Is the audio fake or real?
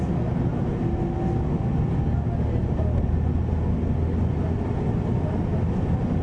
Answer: real